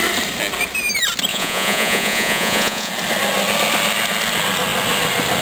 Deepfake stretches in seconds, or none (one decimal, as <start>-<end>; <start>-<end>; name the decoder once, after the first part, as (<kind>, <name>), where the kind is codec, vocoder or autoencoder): 1.3-2.9 (vocoder, Vocos)